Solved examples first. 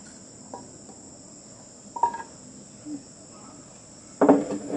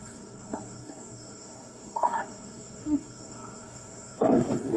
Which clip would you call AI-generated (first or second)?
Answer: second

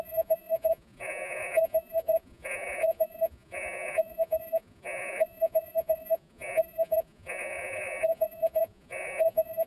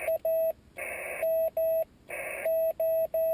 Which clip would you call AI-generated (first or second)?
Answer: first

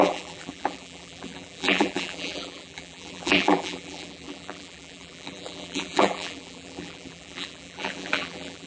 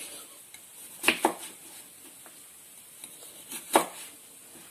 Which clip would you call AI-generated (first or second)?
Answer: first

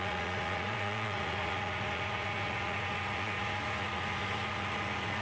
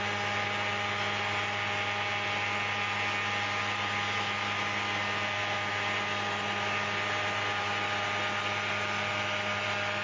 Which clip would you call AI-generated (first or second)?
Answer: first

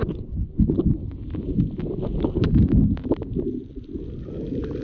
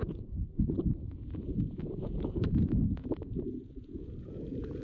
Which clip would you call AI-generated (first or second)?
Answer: second